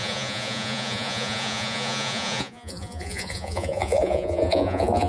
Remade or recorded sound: remade